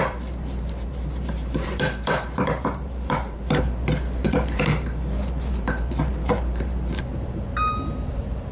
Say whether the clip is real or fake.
fake